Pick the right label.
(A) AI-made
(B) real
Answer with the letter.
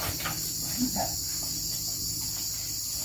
B